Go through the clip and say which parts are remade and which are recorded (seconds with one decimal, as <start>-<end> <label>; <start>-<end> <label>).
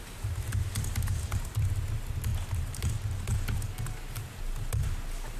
0.0-0.9 recorded; 0.9-1.4 remade; 1.4-2.3 recorded; 2.3-2.9 remade; 2.9-5.4 recorded